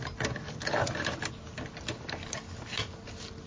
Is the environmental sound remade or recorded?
recorded